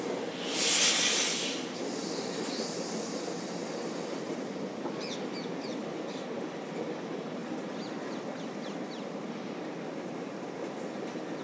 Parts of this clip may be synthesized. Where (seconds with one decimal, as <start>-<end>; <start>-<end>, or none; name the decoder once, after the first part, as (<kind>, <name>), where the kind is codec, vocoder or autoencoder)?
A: none